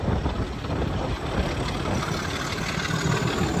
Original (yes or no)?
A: yes